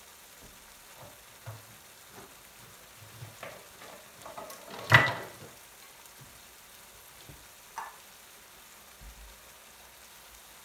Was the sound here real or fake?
real